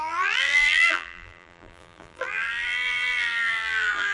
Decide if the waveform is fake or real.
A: fake